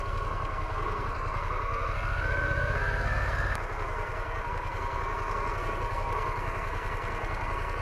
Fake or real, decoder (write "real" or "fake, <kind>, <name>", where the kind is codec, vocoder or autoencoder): fake, codec, SNAC